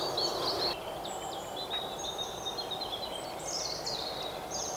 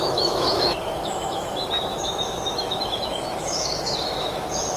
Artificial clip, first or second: second